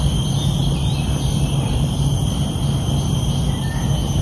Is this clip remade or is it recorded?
recorded